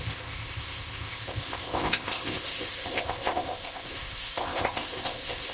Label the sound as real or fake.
fake